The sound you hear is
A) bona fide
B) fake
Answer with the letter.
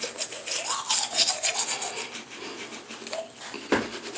A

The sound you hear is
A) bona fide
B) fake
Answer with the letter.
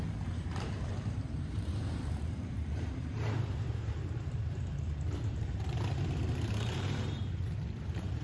B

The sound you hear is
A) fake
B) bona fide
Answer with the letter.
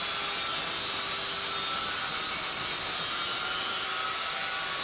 A